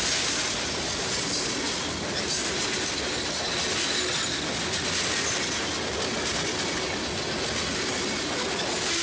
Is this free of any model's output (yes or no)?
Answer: yes